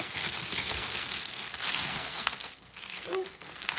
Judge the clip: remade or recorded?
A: remade